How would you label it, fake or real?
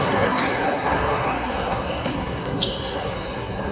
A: fake